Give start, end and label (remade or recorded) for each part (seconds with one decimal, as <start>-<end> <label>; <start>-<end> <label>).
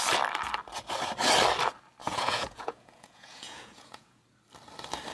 0.0-2.0 recorded; 2.0-4.2 remade; 4.2-5.1 recorded